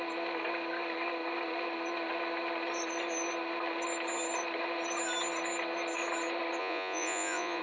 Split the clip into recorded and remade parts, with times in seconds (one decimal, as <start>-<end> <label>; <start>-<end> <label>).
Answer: 0.0-6.6 recorded; 6.6-7.6 remade